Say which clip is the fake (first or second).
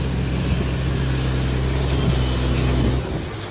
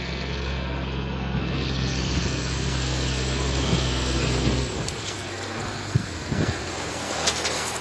second